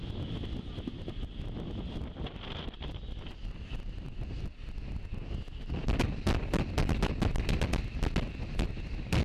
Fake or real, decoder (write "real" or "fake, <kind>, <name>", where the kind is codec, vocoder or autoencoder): real